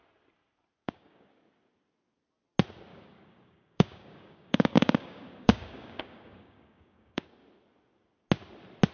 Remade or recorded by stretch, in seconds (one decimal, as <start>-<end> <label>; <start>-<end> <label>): 0.0-0.8 recorded; 0.8-1.3 remade; 1.3-2.9 recorded; 2.9-7.3 remade; 7.3-8.9 recorded